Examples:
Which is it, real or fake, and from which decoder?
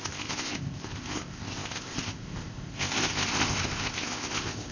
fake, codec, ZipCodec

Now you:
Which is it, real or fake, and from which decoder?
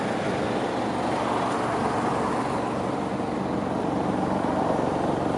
real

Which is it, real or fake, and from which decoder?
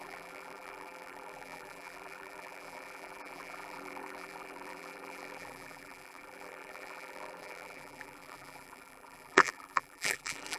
fake, vocoder, BigVGAN v2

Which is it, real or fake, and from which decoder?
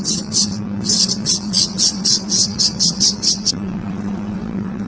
fake, vocoder, WaveNeXt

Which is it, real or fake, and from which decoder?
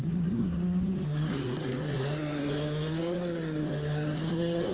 fake, codec, SNAC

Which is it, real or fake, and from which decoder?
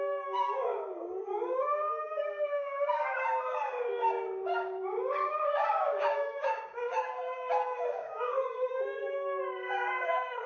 fake, codec, DAC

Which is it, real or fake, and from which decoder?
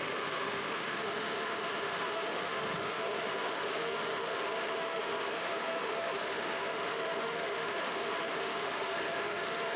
fake, autoencoder, DAC-VAE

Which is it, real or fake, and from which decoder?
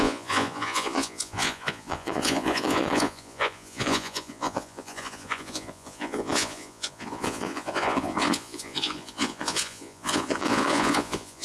fake, vocoder, Vocos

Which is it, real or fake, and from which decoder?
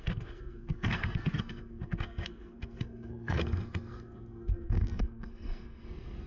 fake, codec, SNAC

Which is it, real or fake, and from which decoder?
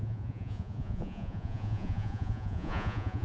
fake, vocoder, Vocos